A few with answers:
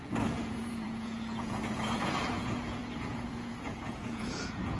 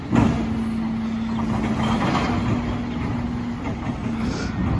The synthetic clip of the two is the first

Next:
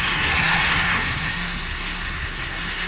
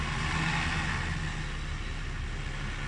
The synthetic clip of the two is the first